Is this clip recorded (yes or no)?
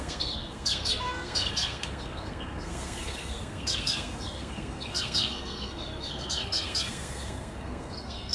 no